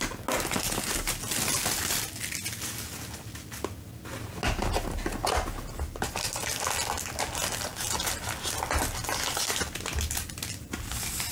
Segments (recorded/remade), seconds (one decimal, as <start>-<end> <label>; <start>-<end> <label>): 0.0-11.3 recorded